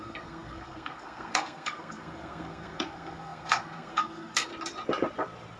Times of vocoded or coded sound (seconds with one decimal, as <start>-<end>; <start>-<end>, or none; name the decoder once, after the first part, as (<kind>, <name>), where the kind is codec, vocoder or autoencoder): 0.0-4.5 (codec, SNAC)

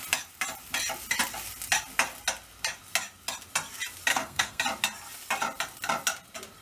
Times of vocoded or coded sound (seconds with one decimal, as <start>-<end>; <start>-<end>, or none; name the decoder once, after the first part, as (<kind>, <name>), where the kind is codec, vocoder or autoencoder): 4.1-4.6 (codec, SNAC)

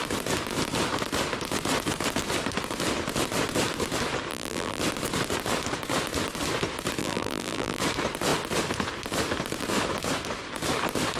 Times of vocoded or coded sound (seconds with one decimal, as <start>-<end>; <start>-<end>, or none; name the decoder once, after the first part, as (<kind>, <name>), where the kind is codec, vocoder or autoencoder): 4.3-4.8 (vocoder, BigVGAN v2); 7.0-7.8

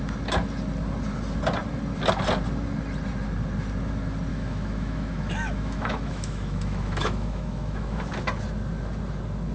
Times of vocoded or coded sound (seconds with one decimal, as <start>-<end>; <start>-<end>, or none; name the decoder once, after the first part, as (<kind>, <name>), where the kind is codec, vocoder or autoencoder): 4.3-8.1 (autoencoder, DAC-VAE)

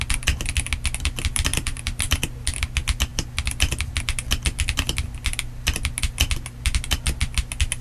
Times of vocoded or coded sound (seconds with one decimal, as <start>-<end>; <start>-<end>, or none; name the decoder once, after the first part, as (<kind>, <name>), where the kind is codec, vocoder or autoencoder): 1.5-2.2 (vocoder, BigVGAN v2)

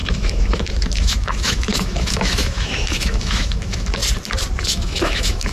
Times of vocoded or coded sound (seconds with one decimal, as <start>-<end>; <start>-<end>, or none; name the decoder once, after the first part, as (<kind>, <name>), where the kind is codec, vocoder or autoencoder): 0.0-4.0 (autoencoder, DAC-VAE); 4.6-5.5

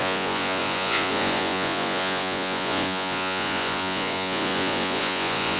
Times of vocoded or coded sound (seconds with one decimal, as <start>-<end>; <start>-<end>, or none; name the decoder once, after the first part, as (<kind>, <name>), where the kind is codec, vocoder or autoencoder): 0.0-5.6 (vocoder, Vocos)